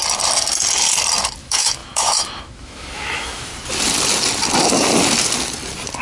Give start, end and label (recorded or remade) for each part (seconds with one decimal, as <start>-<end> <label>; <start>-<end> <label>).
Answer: 0.0-1.4 recorded; 1.4-3.5 remade; 3.5-6.0 recorded